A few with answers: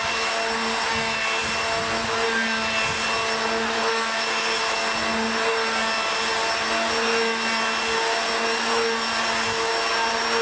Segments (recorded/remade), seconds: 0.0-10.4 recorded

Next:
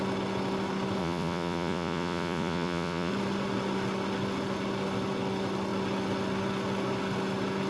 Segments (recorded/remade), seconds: 0.0-1.0 recorded; 1.0-3.1 remade; 3.1-7.7 recorded

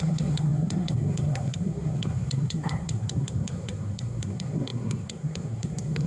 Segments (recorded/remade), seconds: 0.0-6.1 remade